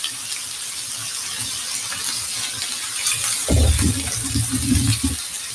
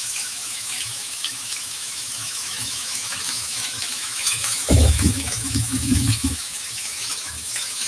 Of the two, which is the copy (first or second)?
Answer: second